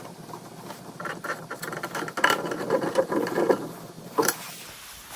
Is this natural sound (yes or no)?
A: no